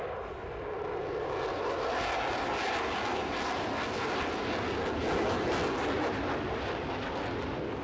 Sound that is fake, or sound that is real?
real